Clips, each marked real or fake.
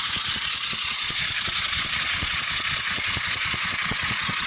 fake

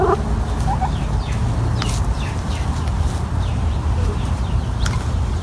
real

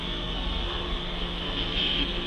fake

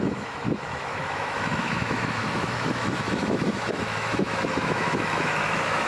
fake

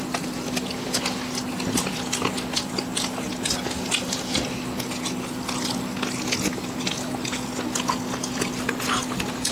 real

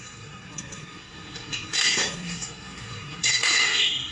fake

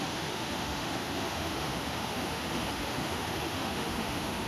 fake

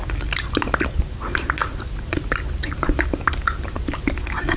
real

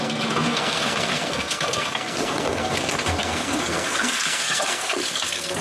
fake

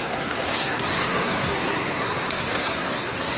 fake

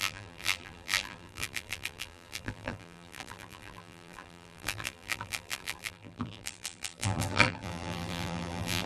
fake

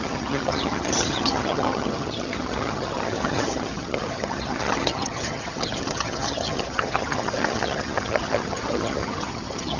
fake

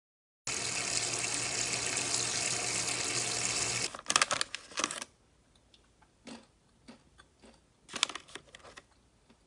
real